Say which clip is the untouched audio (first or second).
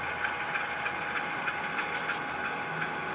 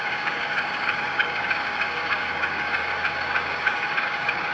first